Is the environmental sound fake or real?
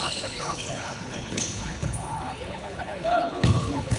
fake